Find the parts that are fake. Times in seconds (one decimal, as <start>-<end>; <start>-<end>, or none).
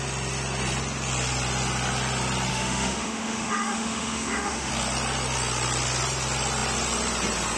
2.5-4.7